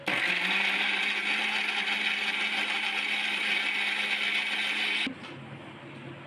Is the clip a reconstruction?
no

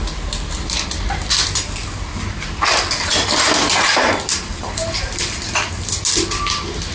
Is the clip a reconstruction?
no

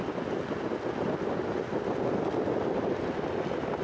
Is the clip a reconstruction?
no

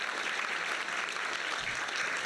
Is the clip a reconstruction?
no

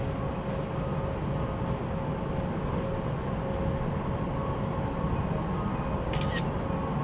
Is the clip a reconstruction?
no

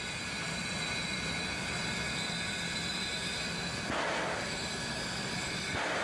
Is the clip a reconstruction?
no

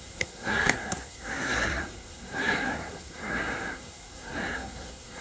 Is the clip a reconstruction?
yes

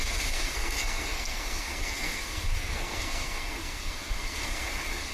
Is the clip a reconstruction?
yes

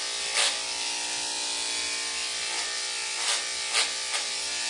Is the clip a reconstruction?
no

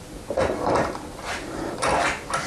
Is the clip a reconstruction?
no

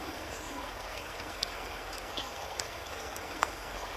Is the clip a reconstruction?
yes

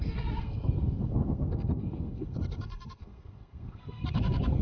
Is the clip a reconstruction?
yes